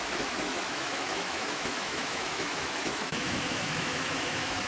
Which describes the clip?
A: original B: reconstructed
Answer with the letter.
B